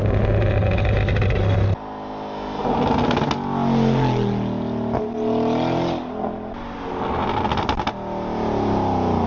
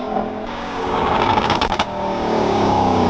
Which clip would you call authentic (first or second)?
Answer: first